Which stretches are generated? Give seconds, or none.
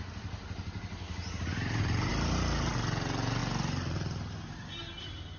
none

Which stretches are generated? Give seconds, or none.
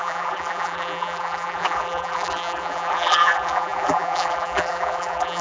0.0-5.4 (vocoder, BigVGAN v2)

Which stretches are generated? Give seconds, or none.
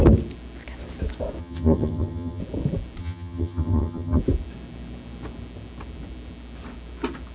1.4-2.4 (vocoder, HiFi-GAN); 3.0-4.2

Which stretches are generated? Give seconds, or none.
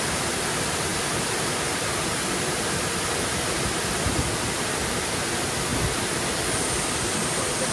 none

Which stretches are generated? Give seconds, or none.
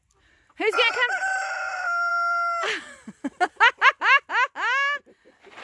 none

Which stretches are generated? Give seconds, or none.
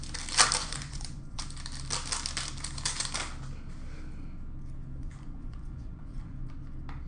0.6-1.4 (vocoder, Vocos); 5.0-6.5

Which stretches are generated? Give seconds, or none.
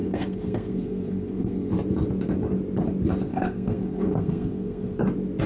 0.0-1.7 (codec, SNAC); 3.3-5.0